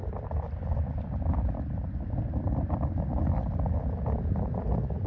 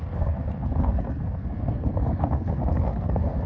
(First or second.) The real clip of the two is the first